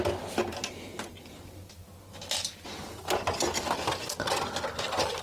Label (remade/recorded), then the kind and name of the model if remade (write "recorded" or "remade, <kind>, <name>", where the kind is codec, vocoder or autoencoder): recorded